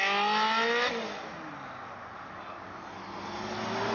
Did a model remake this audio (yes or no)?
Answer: no